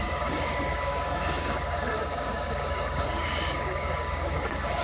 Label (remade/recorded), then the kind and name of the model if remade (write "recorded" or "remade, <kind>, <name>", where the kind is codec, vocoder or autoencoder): remade, codec, DAC